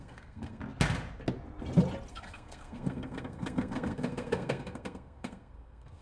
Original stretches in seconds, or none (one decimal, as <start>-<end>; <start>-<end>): 0.6-2.1